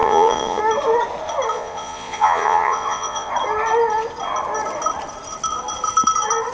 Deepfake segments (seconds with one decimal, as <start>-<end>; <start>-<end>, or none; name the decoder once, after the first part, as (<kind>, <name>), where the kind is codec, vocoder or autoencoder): 0.0-0.6 (vocoder, Vocos); 1.5-3.3

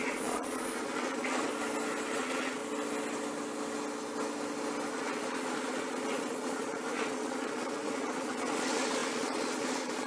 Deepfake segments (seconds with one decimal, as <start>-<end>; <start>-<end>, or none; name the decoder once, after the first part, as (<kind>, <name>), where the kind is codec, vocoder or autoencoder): 0.0-1.5 (vocoder, Vocos); 2.1-2.6; 4.9-10.1